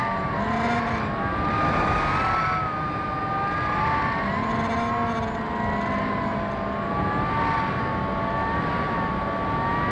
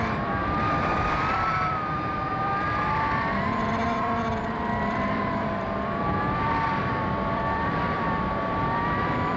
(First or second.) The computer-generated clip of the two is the second